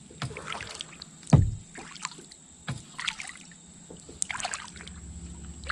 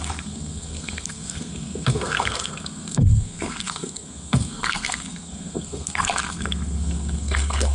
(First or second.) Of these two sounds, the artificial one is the second